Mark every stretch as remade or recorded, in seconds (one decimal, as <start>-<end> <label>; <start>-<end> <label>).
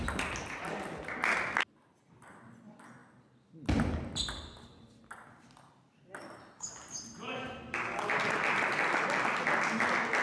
0.0-10.2 recorded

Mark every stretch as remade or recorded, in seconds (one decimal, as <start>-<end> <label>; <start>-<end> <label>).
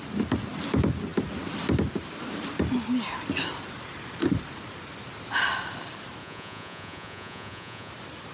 0.0-6.2 recorded; 6.2-7.9 remade; 7.9-8.3 recorded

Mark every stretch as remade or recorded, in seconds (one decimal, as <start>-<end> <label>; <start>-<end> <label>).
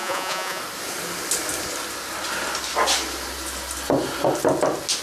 0.0-0.6 remade; 0.6-5.0 recorded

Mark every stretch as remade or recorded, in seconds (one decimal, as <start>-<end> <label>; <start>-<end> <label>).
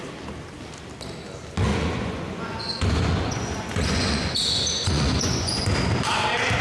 0.0-1.7 recorded; 1.7-5.7 remade; 5.7-6.6 recorded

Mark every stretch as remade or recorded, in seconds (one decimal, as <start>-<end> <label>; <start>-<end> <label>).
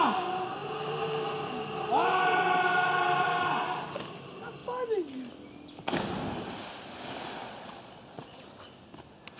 0.0-7.4 recorded; 7.4-8.4 remade; 8.4-9.4 recorded